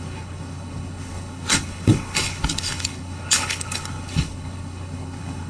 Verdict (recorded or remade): remade